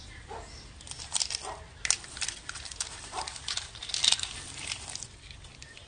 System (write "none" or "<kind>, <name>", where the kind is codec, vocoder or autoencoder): none